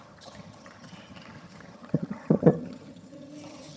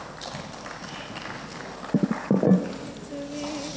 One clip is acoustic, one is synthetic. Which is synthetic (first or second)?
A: first